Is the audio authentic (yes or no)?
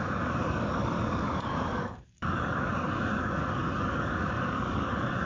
no